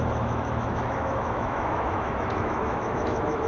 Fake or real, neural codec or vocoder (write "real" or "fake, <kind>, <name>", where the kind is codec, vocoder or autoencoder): fake, autoencoder, DAC-VAE